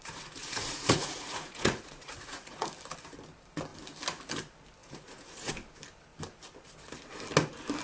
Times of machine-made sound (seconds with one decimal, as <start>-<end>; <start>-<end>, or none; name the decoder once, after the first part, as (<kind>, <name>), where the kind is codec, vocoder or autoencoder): 0.0-2.7 (vocoder, Vocos); 4.8-5.5